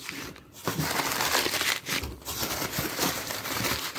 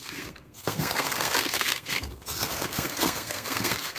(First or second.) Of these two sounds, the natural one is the first